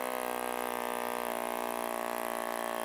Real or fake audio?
real